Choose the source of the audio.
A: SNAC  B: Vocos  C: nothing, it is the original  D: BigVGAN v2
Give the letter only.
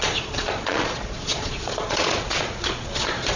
B